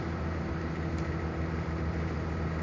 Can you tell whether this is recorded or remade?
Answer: recorded